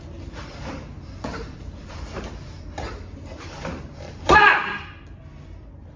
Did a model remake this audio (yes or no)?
no